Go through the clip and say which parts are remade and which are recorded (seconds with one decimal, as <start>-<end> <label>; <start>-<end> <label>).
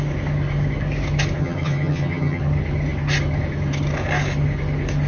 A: 0.0-1.4 recorded; 1.4-2.4 remade; 2.4-5.1 recorded